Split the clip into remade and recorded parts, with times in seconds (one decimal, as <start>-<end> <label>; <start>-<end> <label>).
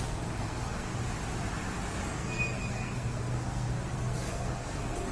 0.0-0.9 remade; 0.9-2.0 recorded; 2.0-5.1 remade